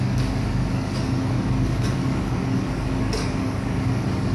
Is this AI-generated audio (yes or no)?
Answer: yes